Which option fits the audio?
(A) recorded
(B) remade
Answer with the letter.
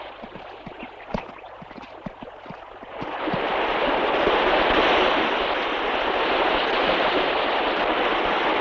A